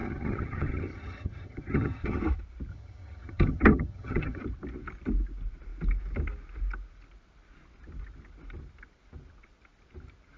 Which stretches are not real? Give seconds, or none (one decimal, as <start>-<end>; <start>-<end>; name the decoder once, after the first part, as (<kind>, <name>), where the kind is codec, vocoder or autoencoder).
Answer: 0.0-2.2 (vocoder, HiFi-GAN); 2.7-4.4